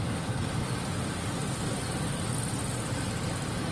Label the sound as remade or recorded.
recorded